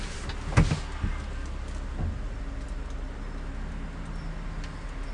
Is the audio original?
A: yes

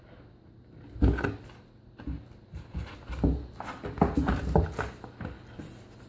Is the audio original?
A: yes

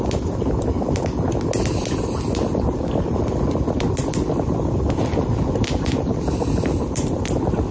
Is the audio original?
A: yes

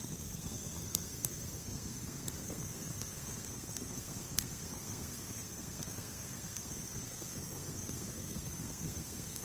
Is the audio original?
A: no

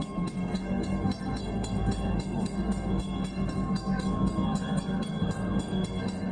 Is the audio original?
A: no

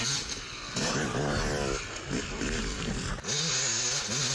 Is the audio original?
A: yes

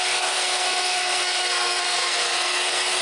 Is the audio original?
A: no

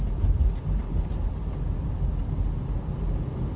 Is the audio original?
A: yes